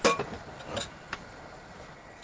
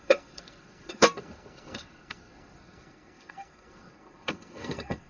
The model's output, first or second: second